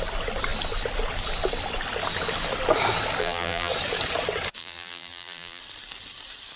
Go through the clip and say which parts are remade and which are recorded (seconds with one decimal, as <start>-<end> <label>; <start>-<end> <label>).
0.0-3.2 recorded; 3.2-3.7 remade; 3.7-4.6 recorded; 4.6-5.6 remade; 5.6-6.6 recorded